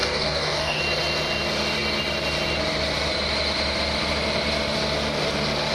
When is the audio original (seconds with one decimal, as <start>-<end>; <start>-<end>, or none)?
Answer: 0.8-5.7